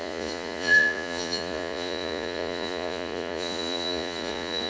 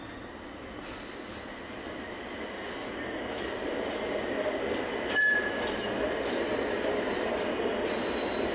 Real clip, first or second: second